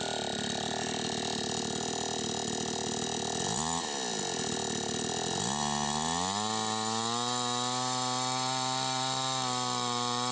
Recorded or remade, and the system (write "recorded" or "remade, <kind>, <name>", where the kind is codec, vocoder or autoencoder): recorded